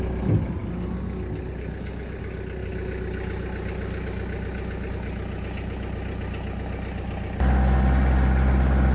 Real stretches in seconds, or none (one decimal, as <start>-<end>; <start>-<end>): 0.0-8.9

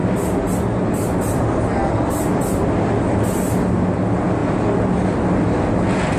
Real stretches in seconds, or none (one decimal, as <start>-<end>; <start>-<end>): 0.0-6.2

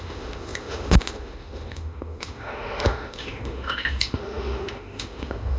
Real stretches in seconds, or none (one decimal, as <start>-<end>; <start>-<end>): none

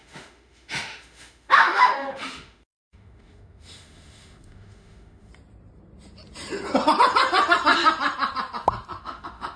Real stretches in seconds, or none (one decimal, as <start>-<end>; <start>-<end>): 5.3-9.0

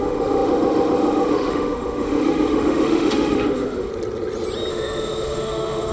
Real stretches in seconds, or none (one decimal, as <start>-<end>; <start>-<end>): 3.9-4.7

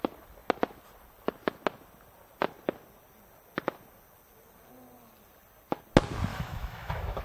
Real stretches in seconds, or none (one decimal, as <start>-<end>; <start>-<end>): 0.0-6.3

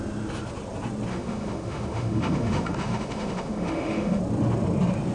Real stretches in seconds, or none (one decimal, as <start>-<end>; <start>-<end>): 0.0-1.1; 4.2-5.1